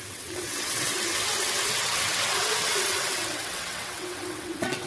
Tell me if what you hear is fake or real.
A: fake